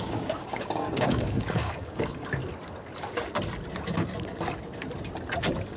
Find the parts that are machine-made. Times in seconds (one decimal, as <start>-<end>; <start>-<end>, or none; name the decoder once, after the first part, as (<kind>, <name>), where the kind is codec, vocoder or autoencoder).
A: 0.0-2.4 (codec, DAC)